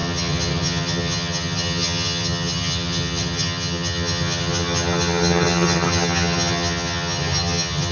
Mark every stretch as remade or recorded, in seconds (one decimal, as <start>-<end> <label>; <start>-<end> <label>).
0.0-7.9 remade